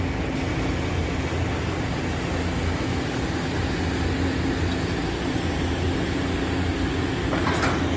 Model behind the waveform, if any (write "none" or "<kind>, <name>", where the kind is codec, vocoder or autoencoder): none